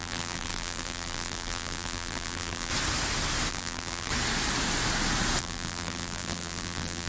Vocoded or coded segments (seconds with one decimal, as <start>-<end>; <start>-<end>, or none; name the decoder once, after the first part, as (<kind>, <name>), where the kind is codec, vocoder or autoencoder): 0.0-2.7 (vocoder, BigVGAN v2); 3.5-4.1; 5.4-7.1

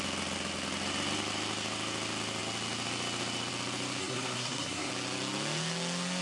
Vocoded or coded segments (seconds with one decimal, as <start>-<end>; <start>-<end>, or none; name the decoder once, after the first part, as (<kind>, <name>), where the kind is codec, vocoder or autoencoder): 4.0-4.9 (codec, SNAC)

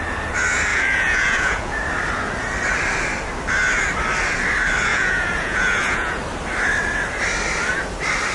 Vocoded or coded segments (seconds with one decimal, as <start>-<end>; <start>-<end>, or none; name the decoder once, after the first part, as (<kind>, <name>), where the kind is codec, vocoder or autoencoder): 0.7-1.8 (vocoder, Vocos); 4.9-6.2

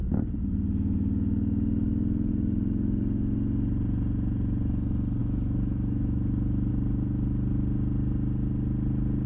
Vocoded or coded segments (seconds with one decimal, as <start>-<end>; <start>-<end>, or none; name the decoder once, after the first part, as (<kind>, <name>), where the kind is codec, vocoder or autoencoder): 5.2-6.7 (autoencoder, DAC-VAE)

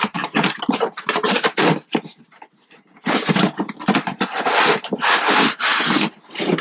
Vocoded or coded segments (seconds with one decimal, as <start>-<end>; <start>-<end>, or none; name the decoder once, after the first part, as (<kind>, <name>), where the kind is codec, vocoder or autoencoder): none

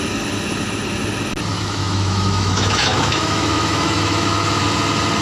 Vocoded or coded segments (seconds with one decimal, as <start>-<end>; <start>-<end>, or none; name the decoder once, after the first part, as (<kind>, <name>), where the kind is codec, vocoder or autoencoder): 1.5-4.6 (autoencoder, DAC-VAE)

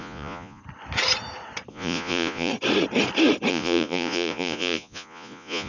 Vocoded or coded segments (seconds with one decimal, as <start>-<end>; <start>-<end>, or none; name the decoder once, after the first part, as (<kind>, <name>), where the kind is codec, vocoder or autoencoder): 0.0-0.6 (vocoder, Vocos); 1.7-2.5; 3.5-5.7